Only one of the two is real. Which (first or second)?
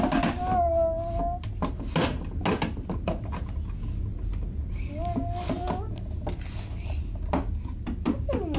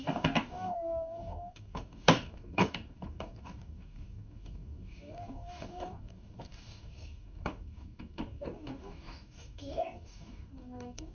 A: first